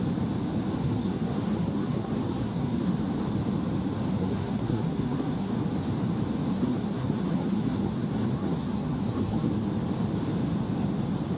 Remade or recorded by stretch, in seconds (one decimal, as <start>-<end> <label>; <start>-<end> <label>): 0.0-0.8 recorded; 0.8-2.9 remade; 2.9-4.1 recorded; 4.1-5.5 remade; 5.5-6.5 recorded; 6.5-9.5 remade; 9.5-11.4 recorded